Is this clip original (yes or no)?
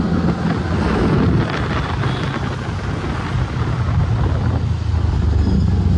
yes